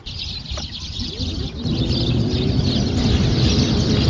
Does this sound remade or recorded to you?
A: remade